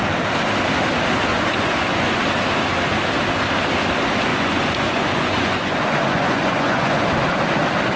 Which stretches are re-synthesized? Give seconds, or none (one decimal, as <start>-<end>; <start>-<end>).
1.3-2.2; 4.3-7.0